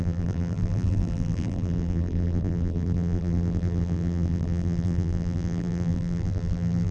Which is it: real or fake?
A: fake